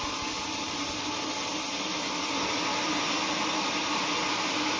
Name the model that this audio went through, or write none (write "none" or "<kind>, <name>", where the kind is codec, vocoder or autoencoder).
none